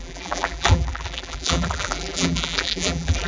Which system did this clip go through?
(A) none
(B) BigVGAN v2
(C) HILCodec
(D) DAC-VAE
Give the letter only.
B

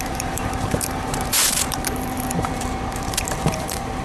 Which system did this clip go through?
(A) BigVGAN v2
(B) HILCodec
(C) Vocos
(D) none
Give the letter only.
A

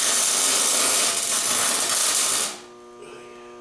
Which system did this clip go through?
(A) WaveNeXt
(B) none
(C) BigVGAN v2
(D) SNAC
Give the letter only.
B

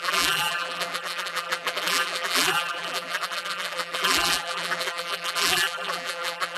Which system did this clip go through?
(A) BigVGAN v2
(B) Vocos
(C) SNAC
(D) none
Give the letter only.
A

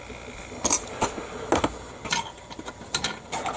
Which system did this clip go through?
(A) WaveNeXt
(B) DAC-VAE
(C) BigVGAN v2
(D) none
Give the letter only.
D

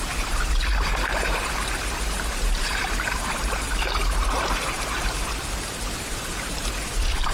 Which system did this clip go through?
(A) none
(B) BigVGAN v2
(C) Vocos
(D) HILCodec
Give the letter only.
B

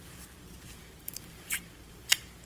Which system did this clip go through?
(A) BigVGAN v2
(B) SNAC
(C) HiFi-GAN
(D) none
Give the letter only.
A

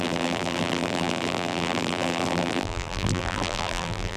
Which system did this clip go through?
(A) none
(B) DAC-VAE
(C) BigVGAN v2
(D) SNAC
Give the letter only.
C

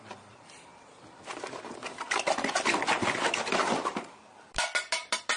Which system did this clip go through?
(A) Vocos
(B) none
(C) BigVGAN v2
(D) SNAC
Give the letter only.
C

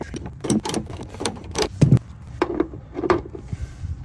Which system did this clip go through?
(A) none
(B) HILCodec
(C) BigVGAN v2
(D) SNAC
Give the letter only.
C